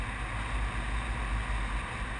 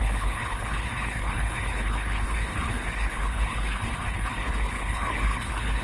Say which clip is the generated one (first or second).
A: second